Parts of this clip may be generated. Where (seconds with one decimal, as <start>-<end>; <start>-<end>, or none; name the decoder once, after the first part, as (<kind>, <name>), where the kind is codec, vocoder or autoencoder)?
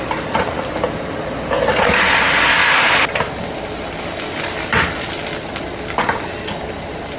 none